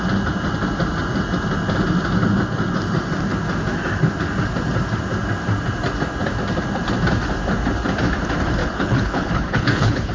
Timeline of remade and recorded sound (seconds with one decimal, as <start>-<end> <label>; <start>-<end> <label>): 0.0-8.6 recorded; 8.6-10.1 remade